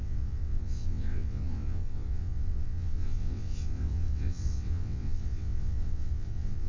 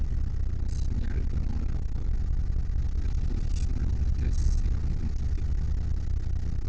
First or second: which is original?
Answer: second